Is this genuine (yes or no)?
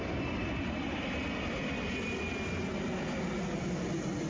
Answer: yes